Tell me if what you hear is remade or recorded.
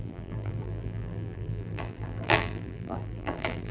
remade